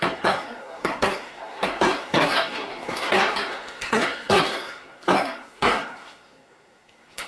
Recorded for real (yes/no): no